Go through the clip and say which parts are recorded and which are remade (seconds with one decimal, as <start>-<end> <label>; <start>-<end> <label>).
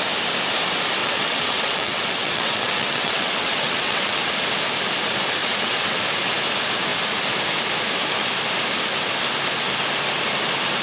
0.0-1.0 recorded; 1.0-4.2 remade; 4.2-5.4 recorded; 5.4-6.0 remade; 6.0-10.8 recorded